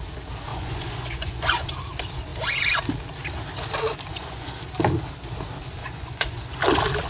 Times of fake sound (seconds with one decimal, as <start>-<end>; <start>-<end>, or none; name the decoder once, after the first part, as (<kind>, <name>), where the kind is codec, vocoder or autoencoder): 0.5-1.7 (vocoder, Vocos); 4.1-4.6; 5.8-6.6